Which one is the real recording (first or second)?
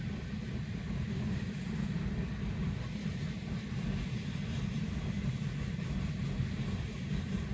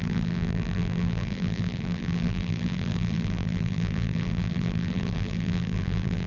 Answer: first